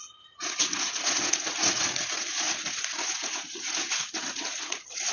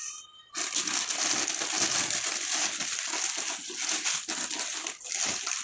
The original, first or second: second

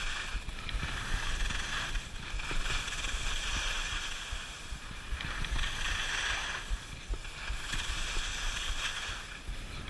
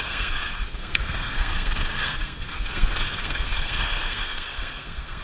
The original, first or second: first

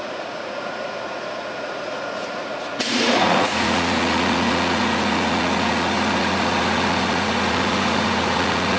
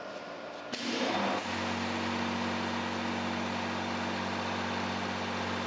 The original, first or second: second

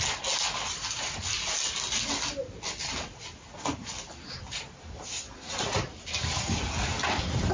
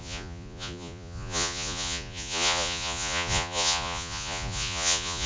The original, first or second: first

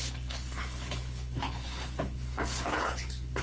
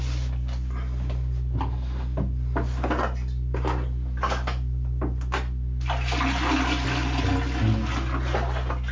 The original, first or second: second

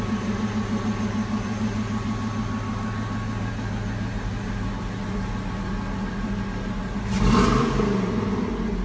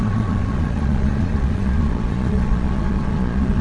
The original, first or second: first